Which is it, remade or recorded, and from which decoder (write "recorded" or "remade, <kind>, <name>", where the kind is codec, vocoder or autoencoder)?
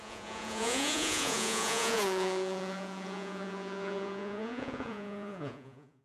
remade, vocoder, Vocos